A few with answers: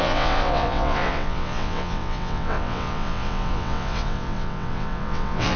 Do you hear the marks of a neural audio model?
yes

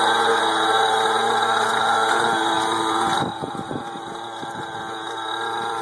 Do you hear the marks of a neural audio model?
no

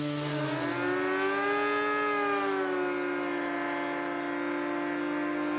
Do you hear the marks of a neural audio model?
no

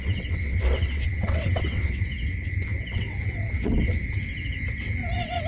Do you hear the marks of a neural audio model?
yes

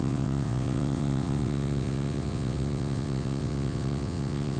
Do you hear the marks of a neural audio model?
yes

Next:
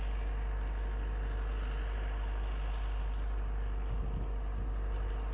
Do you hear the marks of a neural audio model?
no